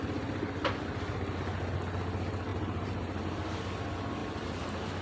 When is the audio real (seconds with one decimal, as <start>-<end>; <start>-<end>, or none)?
0.0-2.5; 3.2-4.2